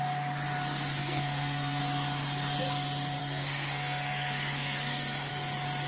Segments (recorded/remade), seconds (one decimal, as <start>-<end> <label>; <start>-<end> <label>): 0.0-1.0 recorded; 1.0-1.8 remade; 1.8-3.2 recorded; 3.2-5.3 remade; 5.3-5.9 recorded